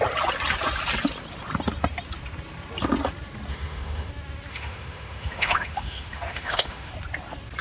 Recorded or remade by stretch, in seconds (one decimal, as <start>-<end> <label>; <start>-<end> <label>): 0.0-3.5 recorded; 3.5-4.1 remade; 4.1-4.5 recorded; 4.5-6.9 remade; 6.9-7.6 recorded